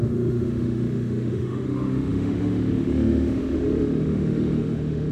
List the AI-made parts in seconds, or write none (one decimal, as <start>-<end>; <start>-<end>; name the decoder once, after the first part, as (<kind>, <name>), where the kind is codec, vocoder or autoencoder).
0.0-5.1 (autoencoder, DAC-VAE)